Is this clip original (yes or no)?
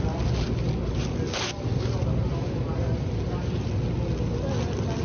yes